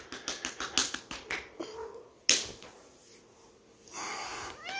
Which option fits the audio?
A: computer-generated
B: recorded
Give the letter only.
B